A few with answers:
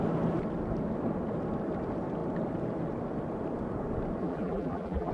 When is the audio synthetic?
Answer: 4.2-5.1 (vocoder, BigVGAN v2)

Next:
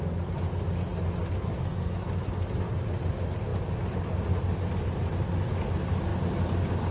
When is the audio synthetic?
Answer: 1.5-2.1 (codec, SNAC)